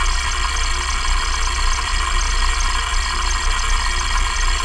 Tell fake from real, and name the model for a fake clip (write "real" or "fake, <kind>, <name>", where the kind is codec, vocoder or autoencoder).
real